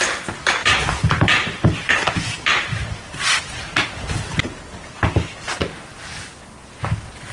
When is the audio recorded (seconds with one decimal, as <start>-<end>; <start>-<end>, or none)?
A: 0.0-0.6; 3.4-7.3